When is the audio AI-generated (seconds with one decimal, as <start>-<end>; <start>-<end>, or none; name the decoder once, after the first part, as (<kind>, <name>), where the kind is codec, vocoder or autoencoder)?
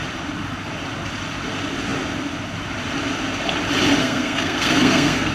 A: 4.0-5.3 (codec, SNAC)